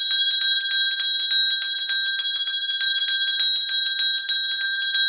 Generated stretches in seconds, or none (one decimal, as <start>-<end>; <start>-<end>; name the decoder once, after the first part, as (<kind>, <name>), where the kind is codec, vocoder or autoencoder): none